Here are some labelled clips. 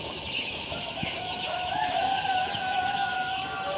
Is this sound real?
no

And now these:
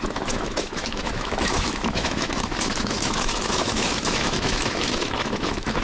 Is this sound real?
no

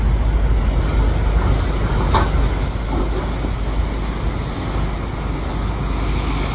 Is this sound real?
yes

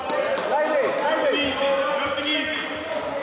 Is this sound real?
yes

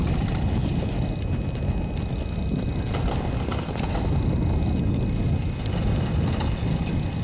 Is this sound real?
yes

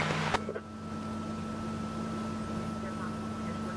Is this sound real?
yes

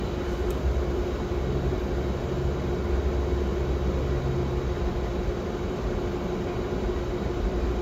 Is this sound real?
yes